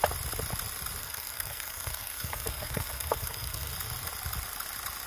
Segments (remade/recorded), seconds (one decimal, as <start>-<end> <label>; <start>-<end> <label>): 0.0-1.0 recorded; 1.0-3.7 remade; 3.7-5.1 recorded